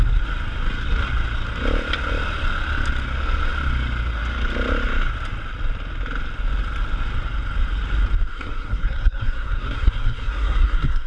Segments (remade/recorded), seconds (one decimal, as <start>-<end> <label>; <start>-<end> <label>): 0.0-8.3 recorded; 8.3-11.1 remade

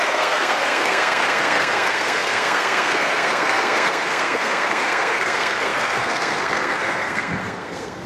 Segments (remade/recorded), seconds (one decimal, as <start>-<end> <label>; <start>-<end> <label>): 0.0-8.1 remade

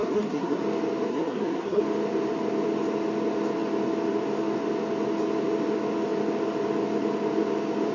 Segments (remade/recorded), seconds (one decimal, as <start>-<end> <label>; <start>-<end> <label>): 0.0-0.6 remade; 0.6-1.1 recorded; 1.1-1.8 remade; 1.8-7.9 recorded

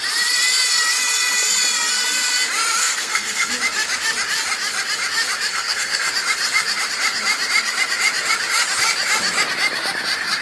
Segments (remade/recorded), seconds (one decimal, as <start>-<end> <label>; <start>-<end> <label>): 0.0-2.8 recorded; 2.8-3.5 remade; 3.5-5.5 recorded; 5.5-6.1 remade; 6.1-10.4 recorded